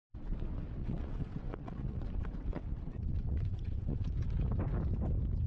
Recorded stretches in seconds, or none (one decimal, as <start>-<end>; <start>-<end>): 0.0-0.8; 4.1-5.5